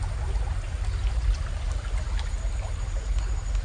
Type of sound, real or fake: real